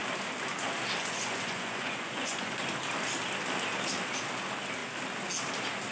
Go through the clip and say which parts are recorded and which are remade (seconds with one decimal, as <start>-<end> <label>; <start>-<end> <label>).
0.0-1.0 recorded; 1.0-2.6 remade; 2.6-5.9 recorded